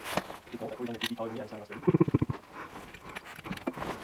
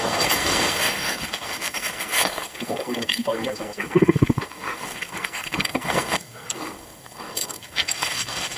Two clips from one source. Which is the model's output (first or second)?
second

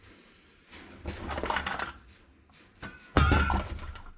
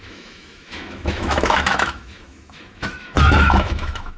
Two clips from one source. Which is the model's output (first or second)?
second